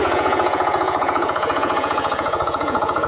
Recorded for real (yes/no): no